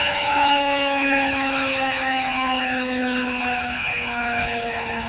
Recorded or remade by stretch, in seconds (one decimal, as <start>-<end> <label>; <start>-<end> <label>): 0.0-5.1 remade